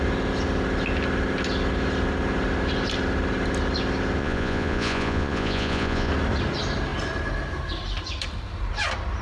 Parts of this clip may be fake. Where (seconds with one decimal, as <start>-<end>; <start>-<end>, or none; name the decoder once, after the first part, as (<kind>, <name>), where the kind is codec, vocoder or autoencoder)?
4.2-6.1 (vocoder, Vocos)